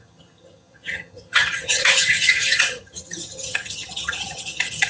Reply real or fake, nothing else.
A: fake